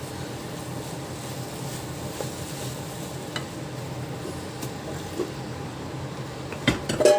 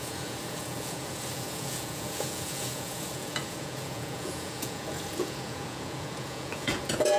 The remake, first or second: second